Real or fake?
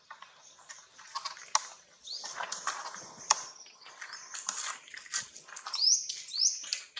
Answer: real